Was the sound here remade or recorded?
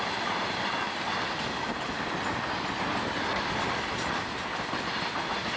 recorded